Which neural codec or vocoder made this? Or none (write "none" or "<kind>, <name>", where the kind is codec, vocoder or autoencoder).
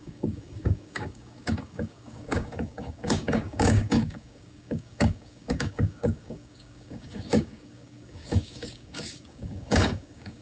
codec, DAC